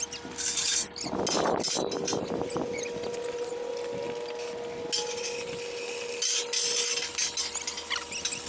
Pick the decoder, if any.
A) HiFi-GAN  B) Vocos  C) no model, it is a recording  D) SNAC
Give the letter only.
C